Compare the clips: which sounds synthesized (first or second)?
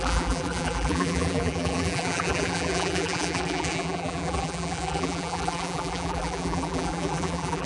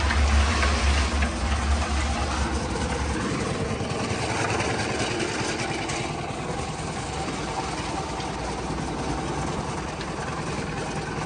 first